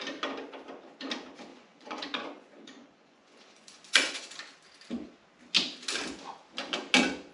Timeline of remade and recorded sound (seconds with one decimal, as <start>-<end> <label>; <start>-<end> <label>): 0.0-1.5 recorded; 1.5-4.3 remade; 4.3-7.3 recorded

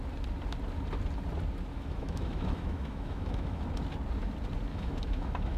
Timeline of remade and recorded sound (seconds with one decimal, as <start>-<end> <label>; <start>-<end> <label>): 0.0-1.7 recorded; 1.7-3.6 remade; 3.6-4.7 recorded; 4.7-5.6 remade

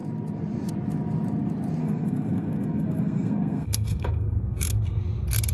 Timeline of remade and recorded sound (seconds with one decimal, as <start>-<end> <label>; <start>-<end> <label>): 0.0-1.8 recorded; 1.8-5.0 remade; 5.0-5.5 recorded

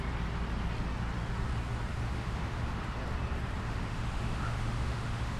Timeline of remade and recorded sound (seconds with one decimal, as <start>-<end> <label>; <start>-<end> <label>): 0.0-1.9 recorded; 1.9-2.8 remade; 2.8-3.6 recorded; 3.6-5.4 remade